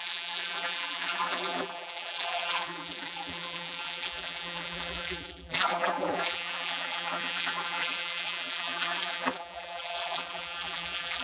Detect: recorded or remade remade